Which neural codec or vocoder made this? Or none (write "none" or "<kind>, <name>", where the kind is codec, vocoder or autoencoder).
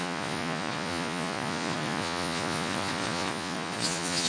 vocoder, Vocos